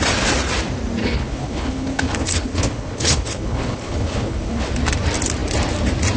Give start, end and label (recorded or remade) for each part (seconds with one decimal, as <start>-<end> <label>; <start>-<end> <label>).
0.0-1.0 recorded; 1.0-4.7 remade; 4.7-6.2 recorded